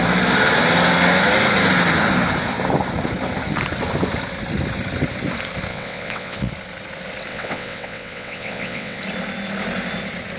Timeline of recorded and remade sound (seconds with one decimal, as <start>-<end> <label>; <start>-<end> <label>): 0.0-5.7 recorded; 5.7-6.5 remade; 6.5-7.3 recorded; 7.3-9.0 remade; 9.0-10.4 recorded